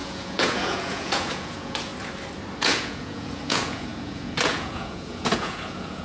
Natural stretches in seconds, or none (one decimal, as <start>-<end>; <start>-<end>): 1.9-2.6